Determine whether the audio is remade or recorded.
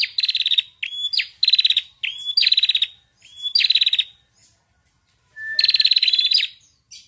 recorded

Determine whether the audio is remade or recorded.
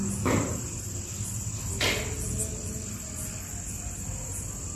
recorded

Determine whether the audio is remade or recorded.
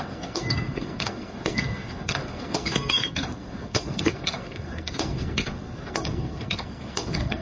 remade